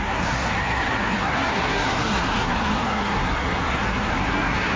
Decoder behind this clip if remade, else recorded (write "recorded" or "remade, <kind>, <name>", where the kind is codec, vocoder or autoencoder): remade, codec, SNAC